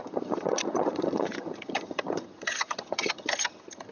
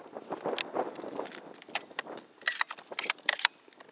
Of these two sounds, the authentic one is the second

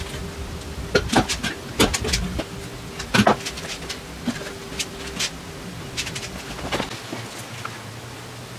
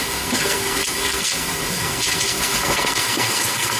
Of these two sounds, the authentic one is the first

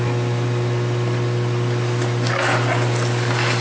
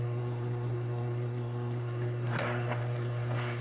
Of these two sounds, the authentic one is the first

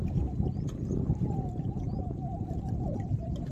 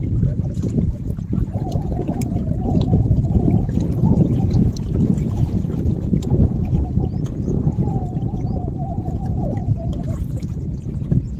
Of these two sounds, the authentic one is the first